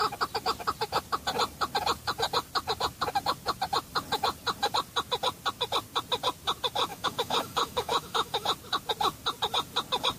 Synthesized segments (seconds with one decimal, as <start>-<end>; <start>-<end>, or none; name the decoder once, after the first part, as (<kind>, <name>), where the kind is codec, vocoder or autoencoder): 6.9-8.5 (autoencoder, DAC-VAE)